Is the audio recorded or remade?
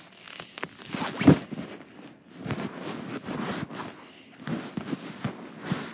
recorded